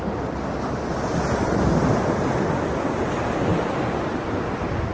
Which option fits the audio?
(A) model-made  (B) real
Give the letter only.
B